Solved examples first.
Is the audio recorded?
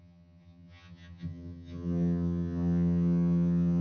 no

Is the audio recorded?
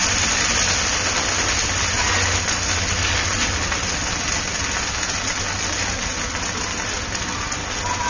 yes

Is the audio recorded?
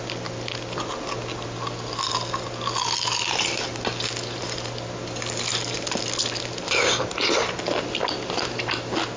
yes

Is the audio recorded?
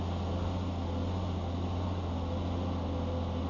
yes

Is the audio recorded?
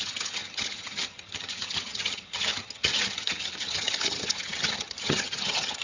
no